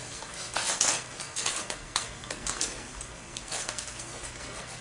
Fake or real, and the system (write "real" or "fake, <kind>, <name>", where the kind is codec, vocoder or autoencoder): fake, codec, SNAC